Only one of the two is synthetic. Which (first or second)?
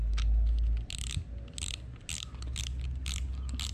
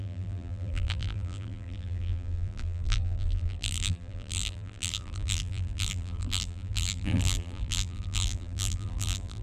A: second